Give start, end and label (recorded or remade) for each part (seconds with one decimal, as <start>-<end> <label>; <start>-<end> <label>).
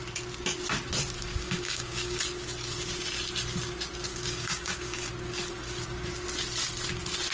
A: 0.0-1.3 recorded; 1.3-2.2 remade; 2.2-4.1 recorded; 4.1-5.1 remade; 5.1-7.3 recorded